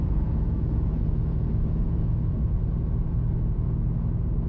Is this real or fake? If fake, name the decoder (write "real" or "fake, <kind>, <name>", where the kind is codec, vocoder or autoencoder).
fake, vocoder, Vocos